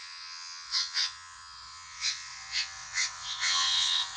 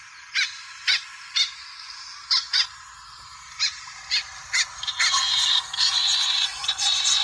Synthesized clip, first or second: first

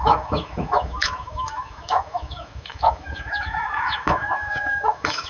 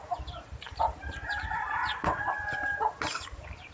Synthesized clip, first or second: first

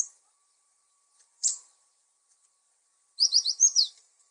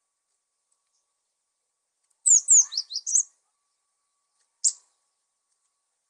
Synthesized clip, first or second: first